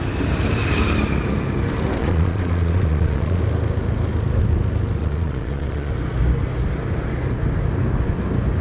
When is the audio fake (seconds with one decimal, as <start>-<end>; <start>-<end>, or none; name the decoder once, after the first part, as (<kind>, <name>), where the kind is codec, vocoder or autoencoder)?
2.0-3.4 (vocoder, Vocos); 5.0-5.9